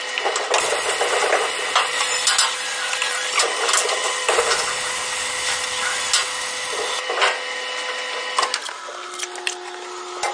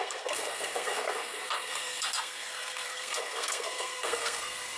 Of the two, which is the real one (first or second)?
first